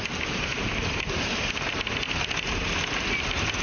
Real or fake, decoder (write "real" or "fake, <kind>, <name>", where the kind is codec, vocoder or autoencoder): real